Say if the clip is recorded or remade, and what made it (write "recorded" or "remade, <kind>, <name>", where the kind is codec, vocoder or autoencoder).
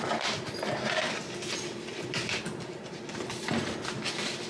recorded